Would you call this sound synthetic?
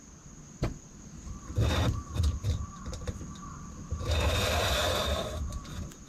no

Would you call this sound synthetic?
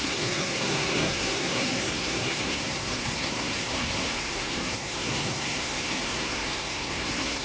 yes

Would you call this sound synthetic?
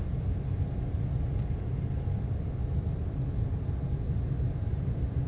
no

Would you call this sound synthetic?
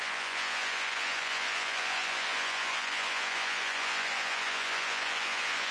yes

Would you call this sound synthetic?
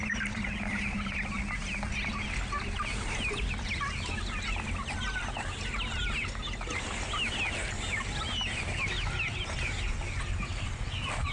no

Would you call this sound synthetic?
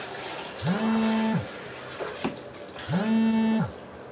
no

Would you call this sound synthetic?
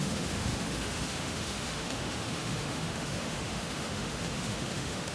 yes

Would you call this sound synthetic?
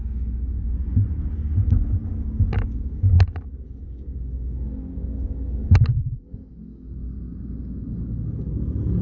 no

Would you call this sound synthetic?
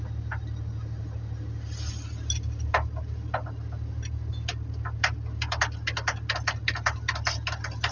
no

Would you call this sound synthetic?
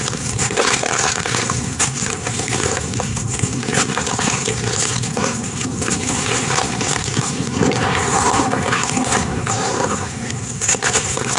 yes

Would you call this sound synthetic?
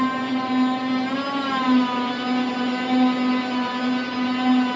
no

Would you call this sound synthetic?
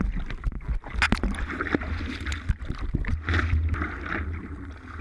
no